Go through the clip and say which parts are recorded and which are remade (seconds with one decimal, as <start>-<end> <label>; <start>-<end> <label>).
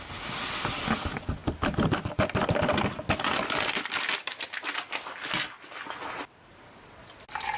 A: 0.0-7.6 recorded